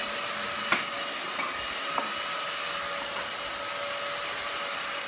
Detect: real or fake real